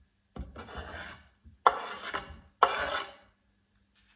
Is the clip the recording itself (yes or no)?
yes